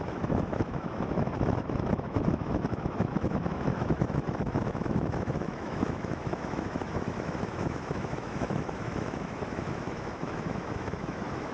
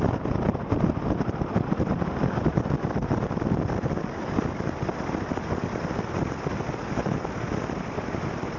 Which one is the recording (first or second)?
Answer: second